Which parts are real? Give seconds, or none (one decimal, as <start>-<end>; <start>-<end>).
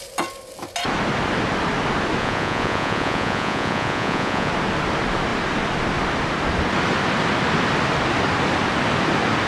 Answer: 0.0-2.2; 4.5-9.5